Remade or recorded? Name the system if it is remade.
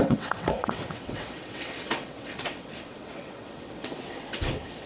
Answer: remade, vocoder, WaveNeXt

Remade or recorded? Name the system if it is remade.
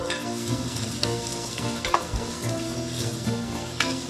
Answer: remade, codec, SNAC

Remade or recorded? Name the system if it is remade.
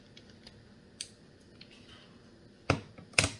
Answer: recorded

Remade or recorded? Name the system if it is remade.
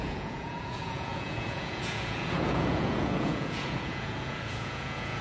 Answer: remade, vocoder, Vocos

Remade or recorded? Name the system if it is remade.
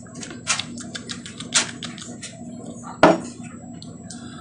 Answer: recorded